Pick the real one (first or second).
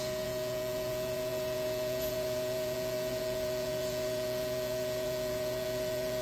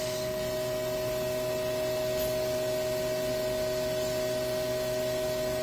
second